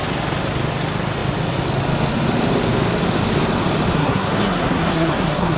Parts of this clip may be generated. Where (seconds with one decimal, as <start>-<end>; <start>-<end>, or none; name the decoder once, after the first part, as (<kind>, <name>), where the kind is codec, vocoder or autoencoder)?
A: 4.0-5.6 (codec, SNAC)